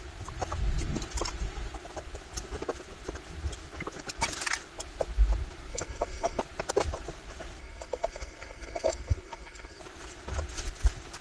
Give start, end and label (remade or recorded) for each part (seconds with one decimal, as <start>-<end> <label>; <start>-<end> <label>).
0.0-5.7 recorded; 5.7-6.4 remade; 6.4-7.6 recorded; 7.6-9.8 remade; 9.8-11.2 recorded